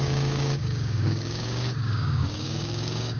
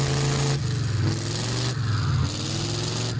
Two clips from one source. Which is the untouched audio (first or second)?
second